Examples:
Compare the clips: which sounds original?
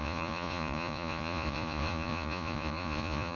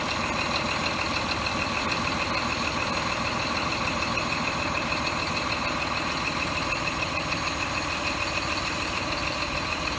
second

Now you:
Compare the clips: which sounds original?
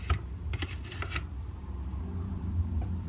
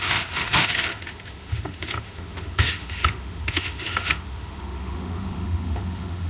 first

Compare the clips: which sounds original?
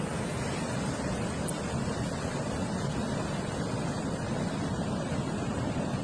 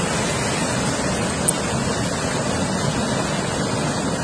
second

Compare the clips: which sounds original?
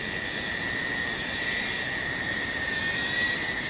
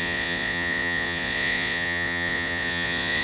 first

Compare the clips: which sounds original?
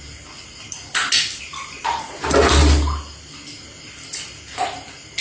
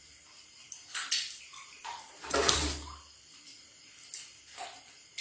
first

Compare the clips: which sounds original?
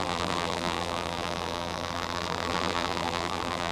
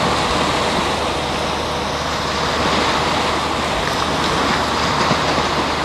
second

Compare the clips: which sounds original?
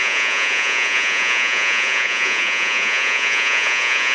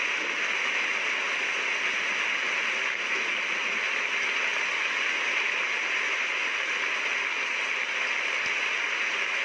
second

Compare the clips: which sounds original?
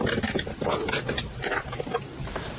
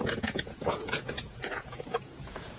first